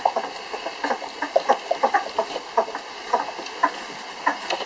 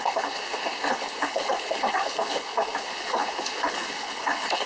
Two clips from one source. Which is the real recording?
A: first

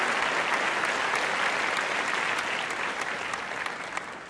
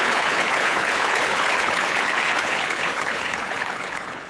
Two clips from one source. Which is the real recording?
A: first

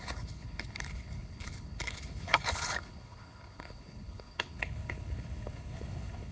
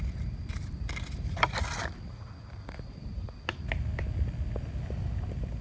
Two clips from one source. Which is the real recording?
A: second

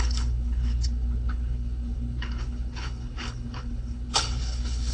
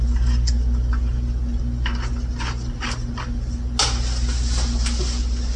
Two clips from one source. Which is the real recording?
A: second